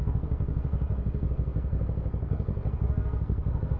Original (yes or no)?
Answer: no